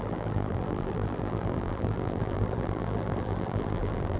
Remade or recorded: remade